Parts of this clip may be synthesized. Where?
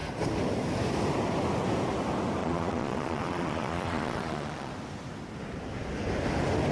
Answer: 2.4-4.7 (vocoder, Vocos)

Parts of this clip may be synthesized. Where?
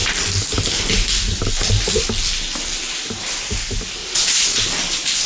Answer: 4.0-4.6 (vocoder, Vocos)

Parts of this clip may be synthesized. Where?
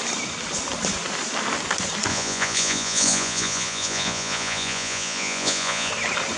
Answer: 2.1-5.9 (vocoder, Vocos)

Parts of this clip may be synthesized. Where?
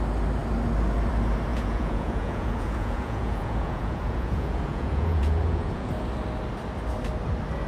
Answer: 1.5-5.9 (vocoder, Vocos)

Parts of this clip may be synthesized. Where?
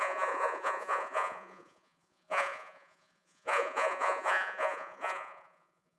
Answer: 0.0-6.0 (vocoder, Vocos)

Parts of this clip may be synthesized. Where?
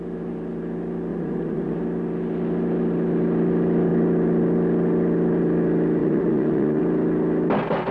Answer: 1.1-1.8 (vocoder, Vocos); 6.0-6.8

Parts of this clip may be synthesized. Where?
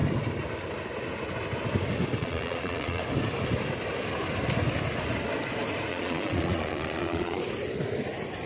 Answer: 2.2-3.0 (vocoder, Vocos); 5.9-7.4